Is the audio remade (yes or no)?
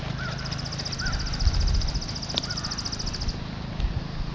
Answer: no